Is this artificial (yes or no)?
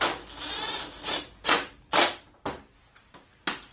no